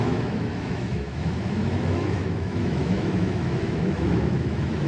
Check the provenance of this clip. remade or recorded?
remade